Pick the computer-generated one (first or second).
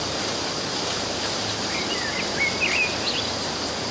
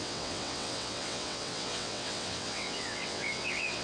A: second